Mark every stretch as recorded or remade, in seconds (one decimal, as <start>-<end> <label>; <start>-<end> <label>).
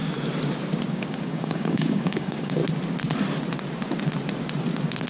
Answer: 0.0-0.9 recorded; 0.9-2.6 remade; 2.6-5.1 recorded